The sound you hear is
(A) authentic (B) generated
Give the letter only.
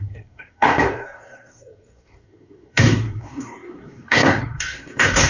B